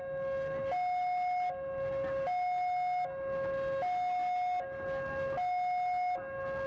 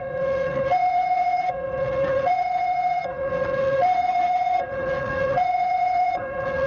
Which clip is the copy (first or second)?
second